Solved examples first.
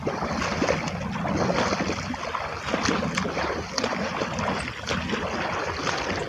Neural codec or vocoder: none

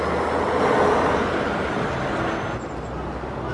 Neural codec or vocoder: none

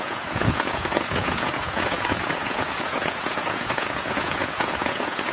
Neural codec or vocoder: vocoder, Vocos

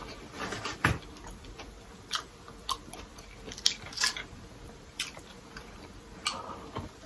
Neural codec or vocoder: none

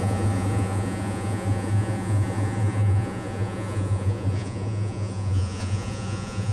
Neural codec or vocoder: vocoder, Vocos